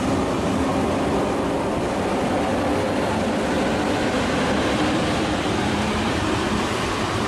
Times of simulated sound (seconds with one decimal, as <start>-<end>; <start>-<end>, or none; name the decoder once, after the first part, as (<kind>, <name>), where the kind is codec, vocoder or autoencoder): 0.0-0.7 (vocoder, BigVGAN v2); 4.8-7.3